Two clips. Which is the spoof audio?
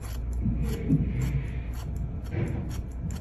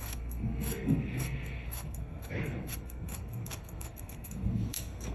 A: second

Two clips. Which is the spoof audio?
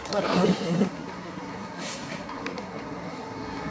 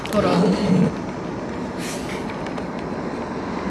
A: first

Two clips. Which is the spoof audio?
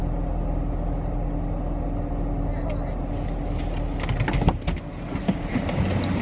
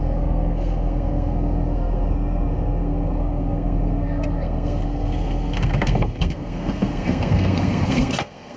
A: second